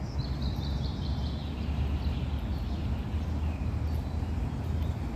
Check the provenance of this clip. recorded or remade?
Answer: recorded